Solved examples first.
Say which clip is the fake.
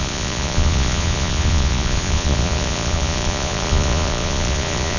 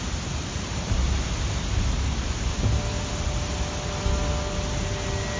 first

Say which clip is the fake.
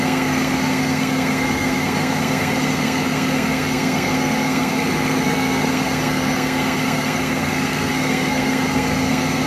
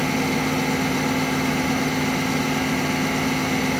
first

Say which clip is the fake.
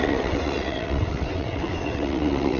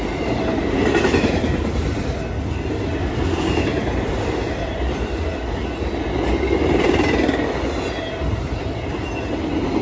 first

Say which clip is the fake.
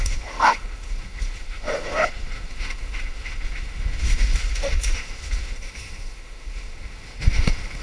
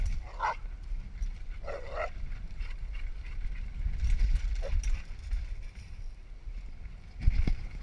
first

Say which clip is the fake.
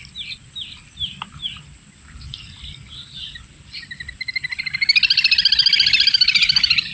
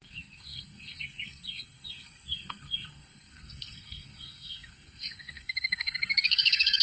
second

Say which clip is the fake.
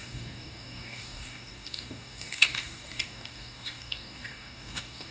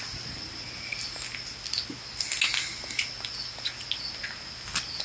first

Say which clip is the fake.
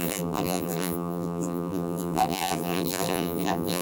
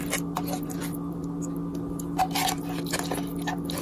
first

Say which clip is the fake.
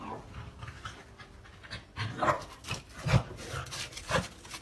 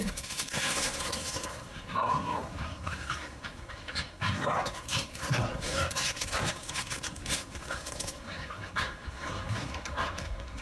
second